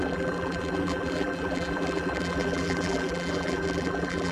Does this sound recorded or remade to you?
remade